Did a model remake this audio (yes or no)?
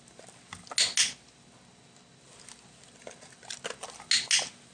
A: no